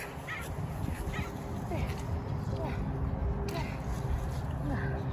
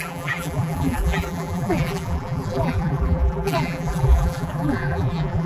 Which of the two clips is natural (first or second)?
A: first